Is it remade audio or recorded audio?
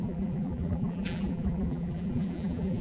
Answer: remade